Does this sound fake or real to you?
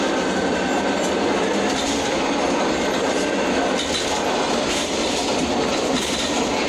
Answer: fake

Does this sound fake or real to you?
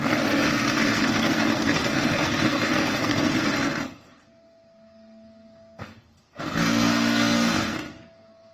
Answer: fake